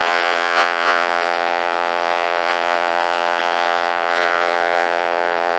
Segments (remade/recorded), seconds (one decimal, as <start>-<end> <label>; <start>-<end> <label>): 0.0-5.6 remade